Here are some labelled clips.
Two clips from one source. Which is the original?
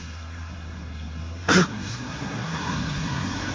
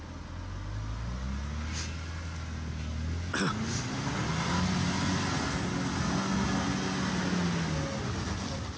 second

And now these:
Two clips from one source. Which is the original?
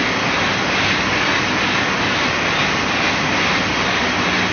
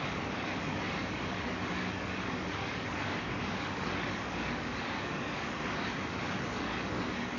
first